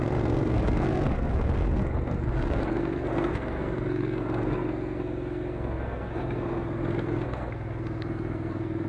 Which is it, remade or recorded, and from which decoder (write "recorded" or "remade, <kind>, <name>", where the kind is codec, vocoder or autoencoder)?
remade, codec, SNAC